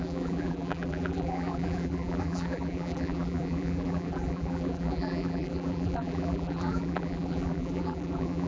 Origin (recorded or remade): remade